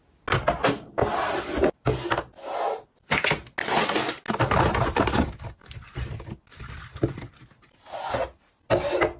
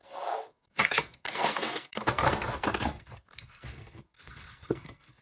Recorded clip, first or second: first